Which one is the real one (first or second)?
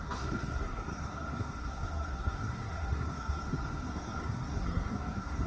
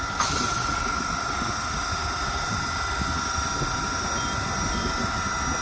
second